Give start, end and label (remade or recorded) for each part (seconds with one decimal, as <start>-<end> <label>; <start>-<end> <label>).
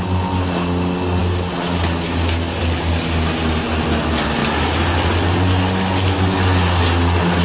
0.0-7.4 recorded